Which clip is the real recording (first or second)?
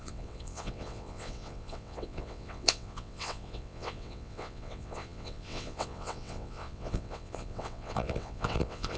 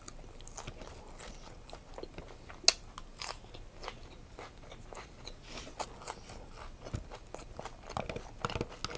second